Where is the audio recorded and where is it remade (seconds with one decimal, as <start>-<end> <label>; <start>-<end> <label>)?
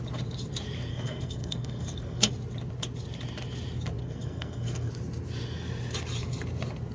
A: 0.0-0.9 recorded; 0.9-2.3 remade; 2.3-4.0 recorded; 4.0-4.9 remade; 4.9-6.9 recorded